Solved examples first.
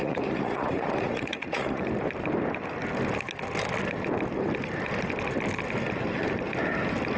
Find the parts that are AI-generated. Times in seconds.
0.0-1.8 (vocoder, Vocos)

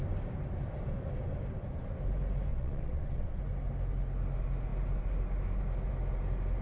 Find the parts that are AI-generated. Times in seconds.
2.5-3.4 (vocoder, WaveNeXt)

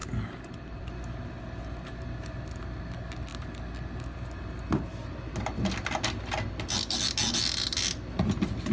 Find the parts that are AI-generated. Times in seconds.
none

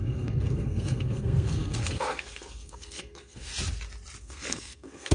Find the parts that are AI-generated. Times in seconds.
0.0-3.5 (codec, SNAC); 4.2-5.1